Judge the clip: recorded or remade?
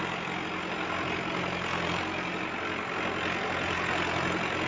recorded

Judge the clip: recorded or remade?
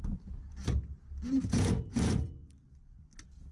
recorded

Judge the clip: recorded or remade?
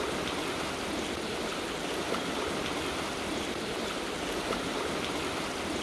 recorded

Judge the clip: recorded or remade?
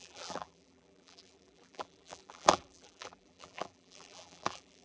remade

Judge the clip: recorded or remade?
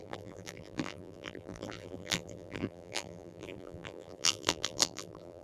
remade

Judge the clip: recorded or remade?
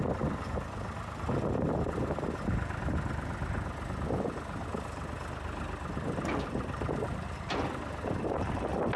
recorded